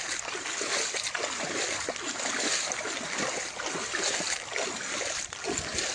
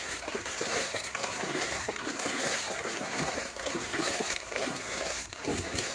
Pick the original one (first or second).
first